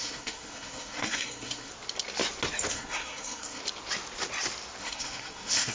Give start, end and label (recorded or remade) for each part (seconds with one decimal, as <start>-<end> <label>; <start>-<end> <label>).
0.0-1.7 remade; 1.7-2.7 recorded; 2.7-3.6 remade; 3.6-4.8 recorded; 4.8-5.7 remade